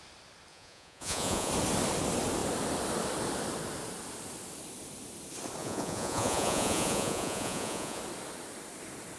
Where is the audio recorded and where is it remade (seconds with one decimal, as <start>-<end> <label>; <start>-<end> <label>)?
0.0-0.5 recorded; 0.5-1.5 remade; 1.5-5.6 recorded; 5.6-8.0 remade; 8.0-9.2 recorded